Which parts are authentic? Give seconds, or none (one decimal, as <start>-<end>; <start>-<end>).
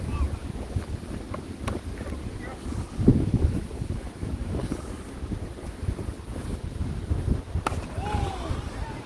0.0-3.1; 4.6-9.1